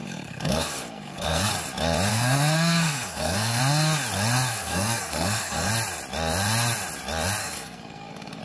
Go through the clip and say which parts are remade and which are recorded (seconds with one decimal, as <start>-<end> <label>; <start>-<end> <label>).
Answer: 0.0-1.5 remade; 1.5-2.1 recorded; 2.1-3.6 remade; 3.6-4.5 recorded; 4.5-5.7 remade; 5.7-7.4 recorded; 7.4-8.4 remade